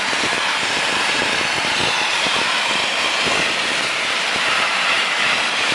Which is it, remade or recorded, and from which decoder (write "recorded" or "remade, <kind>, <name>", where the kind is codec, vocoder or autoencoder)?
remade, vocoder, BigVGAN v2